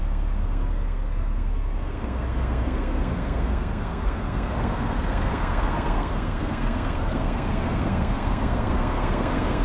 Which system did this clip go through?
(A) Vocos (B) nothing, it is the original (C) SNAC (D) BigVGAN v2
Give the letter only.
C